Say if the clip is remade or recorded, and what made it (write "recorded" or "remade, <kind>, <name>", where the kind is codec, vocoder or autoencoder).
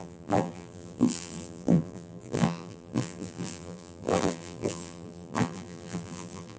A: remade, vocoder, BigVGAN v2